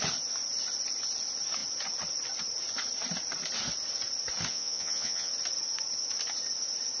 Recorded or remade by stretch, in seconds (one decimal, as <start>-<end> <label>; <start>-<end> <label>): 0.0-4.5 recorded; 4.5-5.3 remade; 5.3-7.0 recorded